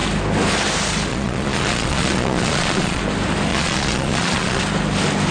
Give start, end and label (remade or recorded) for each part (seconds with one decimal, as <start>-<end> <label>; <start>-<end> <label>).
0.0-1.1 recorded; 1.1-3.0 remade; 3.0-3.5 recorded; 3.5-4.6 remade; 4.6-5.3 recorded